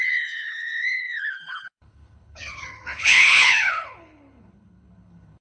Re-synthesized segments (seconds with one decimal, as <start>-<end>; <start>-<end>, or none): 0.0-5.4